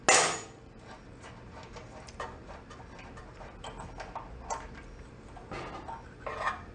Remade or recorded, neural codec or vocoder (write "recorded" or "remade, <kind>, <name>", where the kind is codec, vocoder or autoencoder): recorded